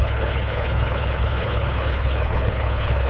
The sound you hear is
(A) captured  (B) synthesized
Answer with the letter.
B